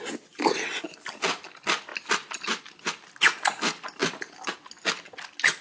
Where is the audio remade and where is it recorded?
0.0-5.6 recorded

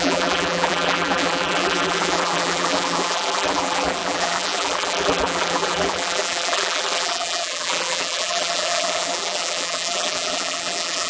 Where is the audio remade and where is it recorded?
0.0-11.1 remade

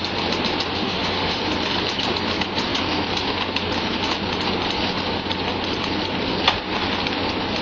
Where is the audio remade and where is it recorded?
0.0-0.7 recorded; 0.7-1.4 remade; 1.4-7.6 recorded